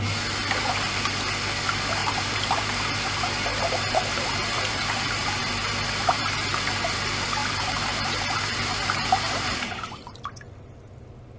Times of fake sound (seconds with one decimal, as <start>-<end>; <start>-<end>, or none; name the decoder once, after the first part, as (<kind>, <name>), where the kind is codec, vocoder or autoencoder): 2.0-2.9 (vocoder, BigVGAN v2); 3.5-6.2; 7.4-10.0